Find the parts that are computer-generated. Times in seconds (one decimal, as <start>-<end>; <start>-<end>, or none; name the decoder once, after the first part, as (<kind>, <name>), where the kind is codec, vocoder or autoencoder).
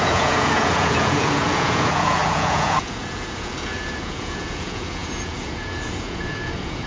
0.0-6.9 (vocoder, Vocos)